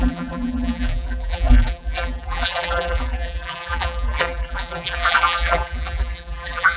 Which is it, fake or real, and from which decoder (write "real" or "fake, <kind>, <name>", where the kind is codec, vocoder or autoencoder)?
fake, vocoder, BigVGAN v2